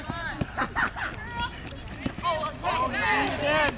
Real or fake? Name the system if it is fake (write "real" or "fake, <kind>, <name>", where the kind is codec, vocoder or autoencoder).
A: real